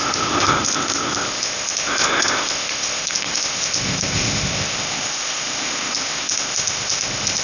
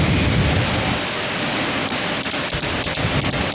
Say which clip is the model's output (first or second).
first